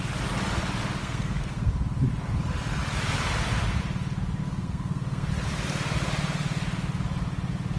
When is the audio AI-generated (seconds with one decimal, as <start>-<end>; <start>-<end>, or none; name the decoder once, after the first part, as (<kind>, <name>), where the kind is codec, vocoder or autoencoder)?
1.0-1.7 (codec, SNAC); 4.4-5.3